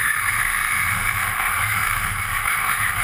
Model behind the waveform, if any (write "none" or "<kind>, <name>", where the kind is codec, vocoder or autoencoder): autoencoder, DAC-VAE